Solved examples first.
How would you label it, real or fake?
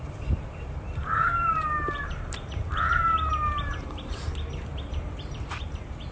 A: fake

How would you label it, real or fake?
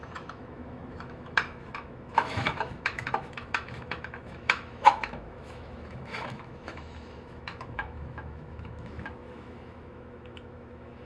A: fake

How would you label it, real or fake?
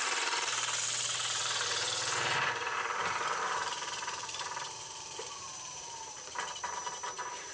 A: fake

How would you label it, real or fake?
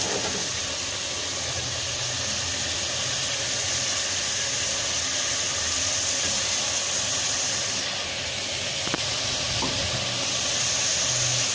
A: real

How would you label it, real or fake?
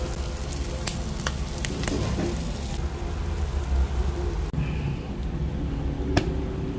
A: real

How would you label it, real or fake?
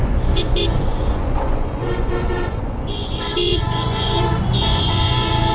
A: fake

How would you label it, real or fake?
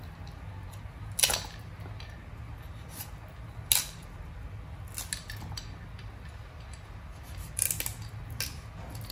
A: real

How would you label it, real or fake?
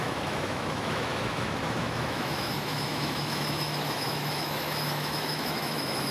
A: fake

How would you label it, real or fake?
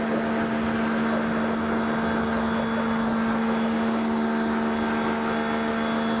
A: real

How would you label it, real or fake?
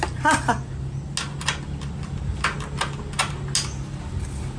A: real